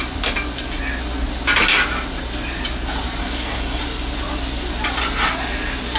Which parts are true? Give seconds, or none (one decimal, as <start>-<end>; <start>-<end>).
0.0-3.2; 3.8-6.0